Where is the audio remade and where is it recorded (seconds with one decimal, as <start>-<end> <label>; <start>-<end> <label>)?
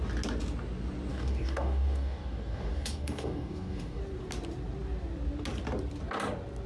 0.0-1.1 recorded; 1.1-4.0 remade; 4.0-6.7 recorded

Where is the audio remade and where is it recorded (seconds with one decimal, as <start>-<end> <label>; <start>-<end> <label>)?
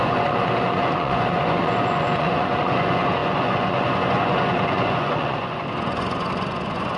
0.0-7.0 remade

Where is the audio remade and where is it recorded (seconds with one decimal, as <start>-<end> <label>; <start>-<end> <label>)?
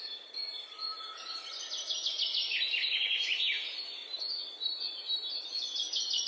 0.0-6.3 recorded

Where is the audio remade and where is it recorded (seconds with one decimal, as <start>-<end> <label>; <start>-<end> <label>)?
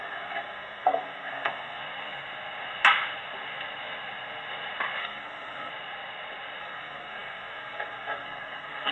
0.0-1.8 remade; 1.8-5.0 recorded; 5.0-5.7 remade; 5.7-6.6 recorded; 6.6-8.9 remade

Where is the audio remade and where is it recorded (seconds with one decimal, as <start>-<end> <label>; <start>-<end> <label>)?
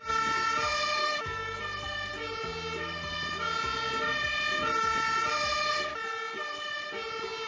0.0-1.0 recorded; 1.0-1.6 remade; 1.6-7.5 recorded